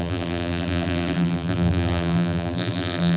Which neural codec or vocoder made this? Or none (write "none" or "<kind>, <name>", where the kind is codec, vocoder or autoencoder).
vocoder, BigVGAN v2